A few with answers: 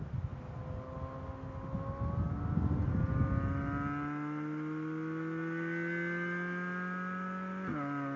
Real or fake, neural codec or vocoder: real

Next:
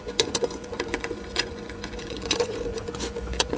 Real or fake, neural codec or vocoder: fake, vocoder, Vocos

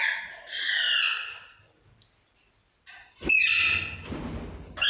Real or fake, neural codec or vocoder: real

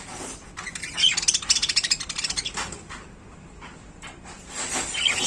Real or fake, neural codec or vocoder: real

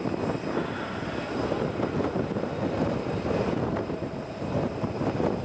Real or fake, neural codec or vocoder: fake, vocoder, BigVGAN v2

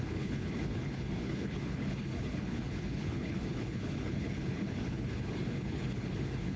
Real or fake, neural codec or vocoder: fake, codec, HILCodec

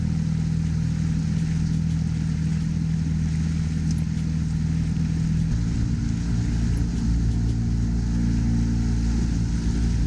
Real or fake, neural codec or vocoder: real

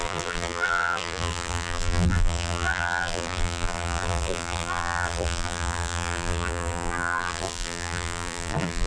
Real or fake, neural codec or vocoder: fake, vocoder, BigVGAN v2